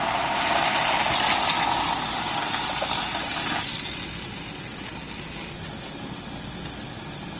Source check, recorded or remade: recorded